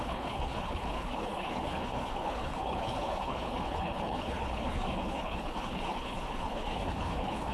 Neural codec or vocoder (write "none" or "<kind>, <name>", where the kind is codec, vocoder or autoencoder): codec, HILCodec